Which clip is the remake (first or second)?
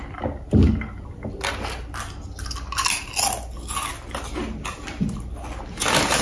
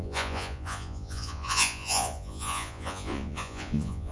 second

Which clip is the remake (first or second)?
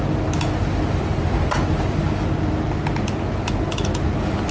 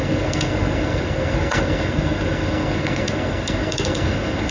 second